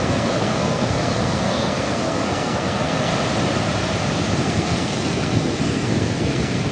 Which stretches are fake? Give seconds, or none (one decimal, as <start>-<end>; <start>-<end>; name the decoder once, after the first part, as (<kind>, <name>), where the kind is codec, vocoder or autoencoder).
0.0-3.1 (codec, SNAC); 4.4-6.7